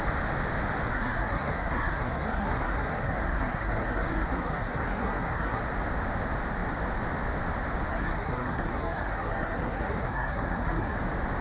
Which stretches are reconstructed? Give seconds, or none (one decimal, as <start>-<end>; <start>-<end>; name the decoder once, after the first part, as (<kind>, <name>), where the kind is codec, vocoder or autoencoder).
0.9-5.6 (codec, SNAC); 7.9-11.0